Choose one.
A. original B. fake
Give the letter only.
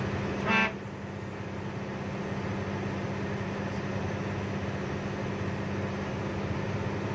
A